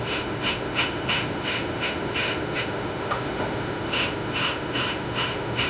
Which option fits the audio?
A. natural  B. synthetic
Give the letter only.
B